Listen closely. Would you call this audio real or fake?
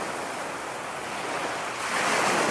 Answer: real